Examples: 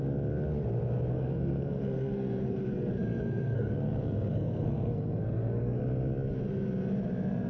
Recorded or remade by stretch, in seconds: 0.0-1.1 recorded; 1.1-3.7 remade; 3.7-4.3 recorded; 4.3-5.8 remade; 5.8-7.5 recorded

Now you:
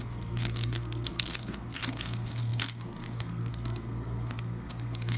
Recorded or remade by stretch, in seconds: 0.0-5.2 remade

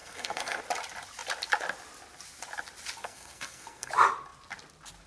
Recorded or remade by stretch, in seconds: 0.0-0.6 remade; 0.6-3.0 recorded; 3.0-3.9 remade; 3.9-5.1 recorded

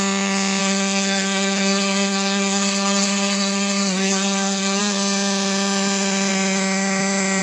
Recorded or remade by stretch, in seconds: 0.0-0.6 recorded; 0.6-4.8 remade; 4.8-7.4 recorded